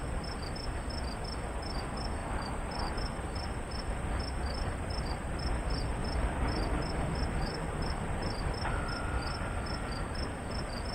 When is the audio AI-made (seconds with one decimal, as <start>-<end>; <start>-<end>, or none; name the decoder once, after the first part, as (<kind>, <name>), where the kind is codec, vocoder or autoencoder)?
2.2-2.9 (vocoder, BigVGAN v2); 6.0-8.5

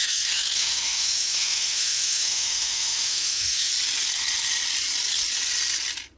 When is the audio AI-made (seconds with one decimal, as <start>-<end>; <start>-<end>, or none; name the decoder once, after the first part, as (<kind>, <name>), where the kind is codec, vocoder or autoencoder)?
0.0-3.7 (autoencoder, DAC-VAE)

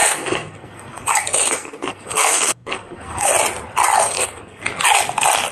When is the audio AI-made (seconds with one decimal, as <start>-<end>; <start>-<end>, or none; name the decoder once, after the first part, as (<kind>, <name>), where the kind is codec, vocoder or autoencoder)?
0.0-3.3 (codec, SNAC); 4.0-4.6

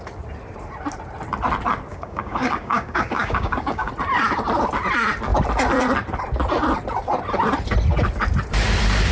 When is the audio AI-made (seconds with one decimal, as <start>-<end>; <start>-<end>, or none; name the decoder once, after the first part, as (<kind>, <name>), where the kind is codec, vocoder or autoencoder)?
1.9-3.9 (codec, DAC)

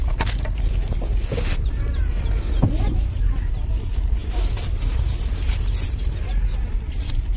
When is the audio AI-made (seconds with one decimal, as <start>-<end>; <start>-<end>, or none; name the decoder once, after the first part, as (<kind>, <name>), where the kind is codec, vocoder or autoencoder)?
none